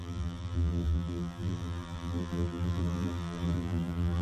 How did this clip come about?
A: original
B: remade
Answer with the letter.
B